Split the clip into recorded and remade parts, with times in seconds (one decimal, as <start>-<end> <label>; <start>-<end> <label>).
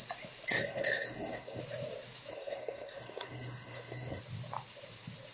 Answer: 0.0-0.6 recorded; 0.6-1.6 remade; 1.6-2.3 recorded; 2.3-4.2 remade; 4.2-5.3 recorded